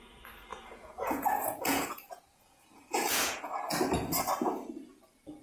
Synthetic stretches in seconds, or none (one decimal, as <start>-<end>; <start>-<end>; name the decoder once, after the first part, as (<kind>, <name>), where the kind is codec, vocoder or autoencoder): 0.5-3.7 (vocoder, Vocos)